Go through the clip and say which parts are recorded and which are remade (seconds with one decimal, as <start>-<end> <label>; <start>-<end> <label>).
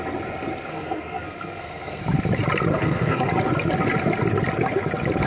0.0-0.7 recorded; 0.7-2.0 remade; 2.0-2.7 recorded; 2.7-3.3 remade; 3.3-5.3 recorded